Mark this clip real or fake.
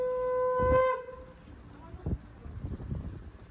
real